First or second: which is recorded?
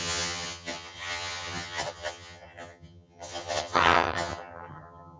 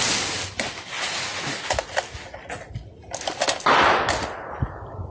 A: second